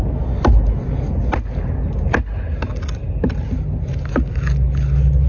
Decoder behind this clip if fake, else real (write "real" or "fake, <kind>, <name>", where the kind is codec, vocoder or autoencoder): real